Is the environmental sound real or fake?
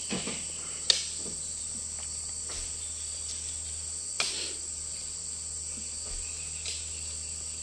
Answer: real